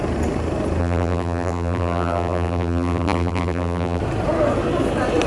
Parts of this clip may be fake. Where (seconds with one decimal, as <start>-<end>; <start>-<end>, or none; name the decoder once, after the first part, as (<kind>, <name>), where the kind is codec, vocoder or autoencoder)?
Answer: 0.8-4.0 (vocoder, BigVGAN v2)